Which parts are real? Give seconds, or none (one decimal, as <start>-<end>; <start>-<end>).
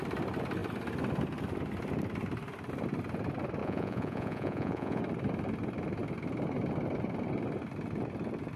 0.0-3.6; 5.0-8.6